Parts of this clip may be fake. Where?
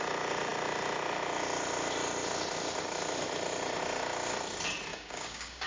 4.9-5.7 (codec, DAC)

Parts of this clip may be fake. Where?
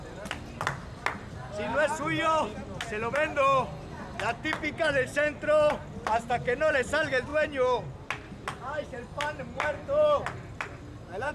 none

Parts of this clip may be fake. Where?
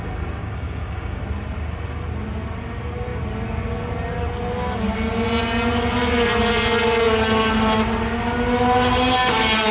0.4-1.2 (codec, DAC)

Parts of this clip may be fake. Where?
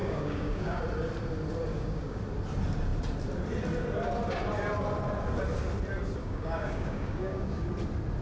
0.0-0.8 (codec, DAC); 1.7-2.2; 6.2-7.7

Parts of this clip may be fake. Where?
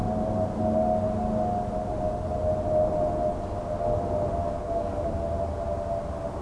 4.4-5.1 (codec, DAC)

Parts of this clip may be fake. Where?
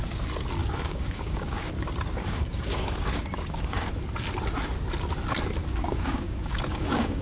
0.6-1.7 (codec, DAC); 2.2-3.9; 5.7-7.2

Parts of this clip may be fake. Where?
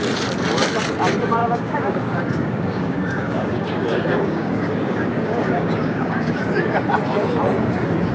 1.4-6.3 (codec, DAC)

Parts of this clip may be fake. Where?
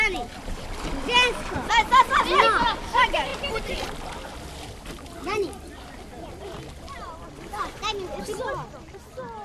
none